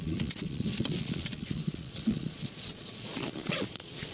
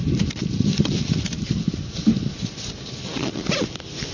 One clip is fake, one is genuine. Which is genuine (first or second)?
second